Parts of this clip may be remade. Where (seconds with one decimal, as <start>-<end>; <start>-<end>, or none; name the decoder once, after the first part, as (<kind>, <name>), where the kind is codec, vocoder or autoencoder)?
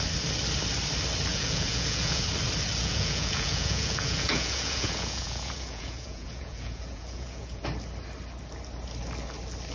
1.3-2.2 (vocoder, Vocos); 2.8-7.6